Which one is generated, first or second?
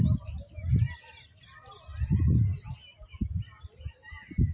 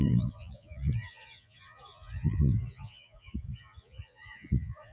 second